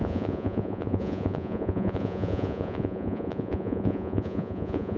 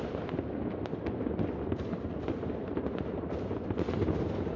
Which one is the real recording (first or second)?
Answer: second